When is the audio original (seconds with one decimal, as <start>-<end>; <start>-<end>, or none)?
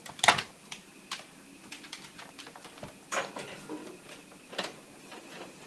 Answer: 0.0-5.7